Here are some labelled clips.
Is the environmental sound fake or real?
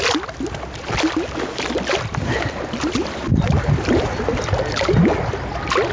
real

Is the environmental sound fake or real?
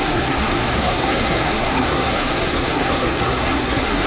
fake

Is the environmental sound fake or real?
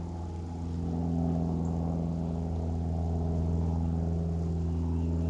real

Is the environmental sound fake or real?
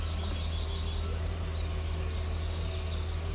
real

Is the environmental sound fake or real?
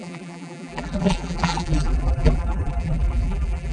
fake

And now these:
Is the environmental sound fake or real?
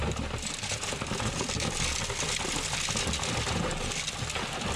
real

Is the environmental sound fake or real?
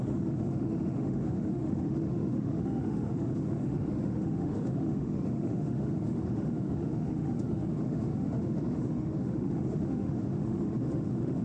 fake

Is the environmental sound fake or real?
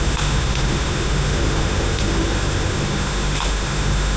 fake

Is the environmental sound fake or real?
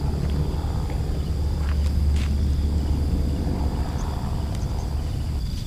real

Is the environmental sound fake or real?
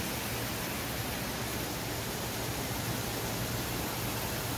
real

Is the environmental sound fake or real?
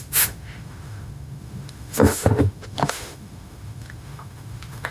fake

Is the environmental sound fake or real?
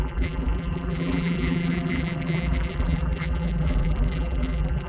fake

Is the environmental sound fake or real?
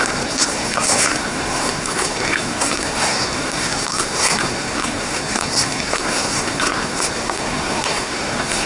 fake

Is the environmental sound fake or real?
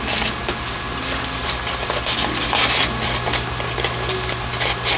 real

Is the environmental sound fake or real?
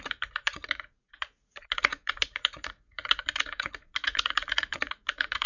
fake